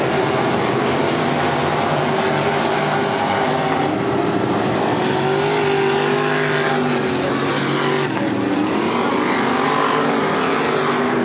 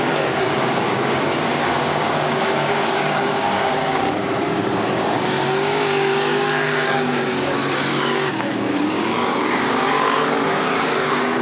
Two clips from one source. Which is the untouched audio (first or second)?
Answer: first